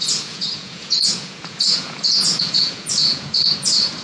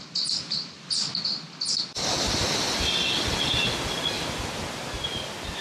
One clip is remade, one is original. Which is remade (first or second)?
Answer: first